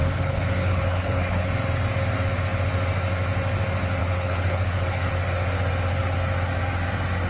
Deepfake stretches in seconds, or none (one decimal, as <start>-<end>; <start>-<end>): 0.0-1.5; 4.0-5.1